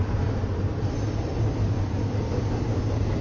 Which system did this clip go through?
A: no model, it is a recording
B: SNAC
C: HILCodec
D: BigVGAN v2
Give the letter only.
A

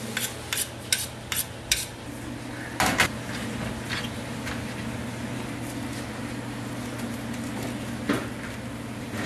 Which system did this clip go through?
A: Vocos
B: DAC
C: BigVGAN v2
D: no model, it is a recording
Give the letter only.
D